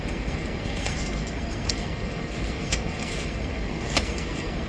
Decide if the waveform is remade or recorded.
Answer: remade